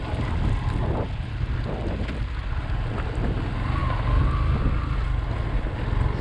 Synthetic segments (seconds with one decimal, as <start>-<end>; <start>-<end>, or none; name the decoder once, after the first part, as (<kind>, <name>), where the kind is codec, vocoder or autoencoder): none